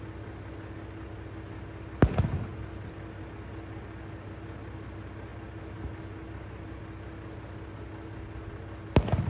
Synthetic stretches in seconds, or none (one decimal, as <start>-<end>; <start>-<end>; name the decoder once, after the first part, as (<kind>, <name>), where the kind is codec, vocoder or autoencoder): none